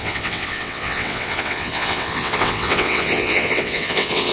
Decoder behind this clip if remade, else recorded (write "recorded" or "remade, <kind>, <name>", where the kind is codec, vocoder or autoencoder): remade, vocoder, WaveNeXt